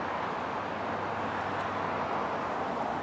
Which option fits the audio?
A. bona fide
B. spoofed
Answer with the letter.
A